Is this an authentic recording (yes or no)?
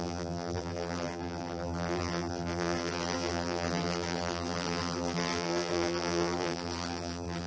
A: no